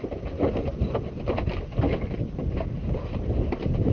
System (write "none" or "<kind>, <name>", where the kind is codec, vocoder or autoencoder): none